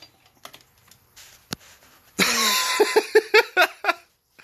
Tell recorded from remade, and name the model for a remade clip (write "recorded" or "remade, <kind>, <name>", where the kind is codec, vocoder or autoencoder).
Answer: recorded